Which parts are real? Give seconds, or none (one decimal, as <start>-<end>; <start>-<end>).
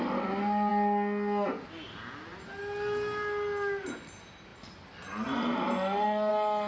0.0-6.7